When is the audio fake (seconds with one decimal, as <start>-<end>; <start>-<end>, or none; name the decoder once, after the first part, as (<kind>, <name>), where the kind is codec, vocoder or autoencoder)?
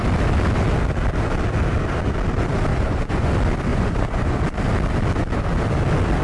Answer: 2.7-3.3 (vocoder, Vocos); 3.7-4.4